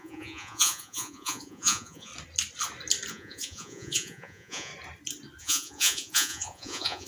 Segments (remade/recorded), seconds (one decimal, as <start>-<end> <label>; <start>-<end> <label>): 0.0-2.1 remade; 2.1-3.1 recorded; 3.1-4.7 remade; 4.7-5.4 recorded; 5.4-7.1 remade